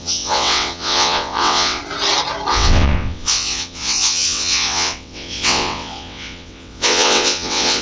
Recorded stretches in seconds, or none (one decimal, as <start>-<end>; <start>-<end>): 1.8-2.5